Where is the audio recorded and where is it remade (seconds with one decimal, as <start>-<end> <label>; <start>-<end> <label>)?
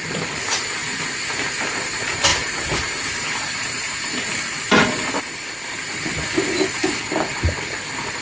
0.0-2.3 recorded; 2.3-5.1 remade; 5.1-6.8 recorded; 6.8-7.6 remade; 7.6-8.2 recorded